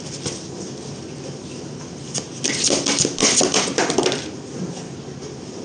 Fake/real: real